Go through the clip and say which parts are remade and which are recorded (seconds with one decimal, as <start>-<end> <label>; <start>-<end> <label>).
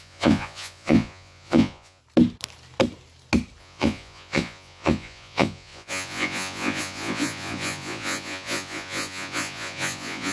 0.0-2.0 remade; 2.0-3.6 recorded; 3.6-10.3 remade